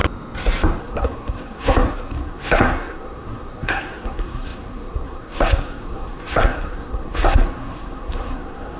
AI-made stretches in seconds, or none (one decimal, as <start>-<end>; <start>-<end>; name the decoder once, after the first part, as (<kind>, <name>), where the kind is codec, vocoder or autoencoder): 0.8-8.8 (codec, SNAC)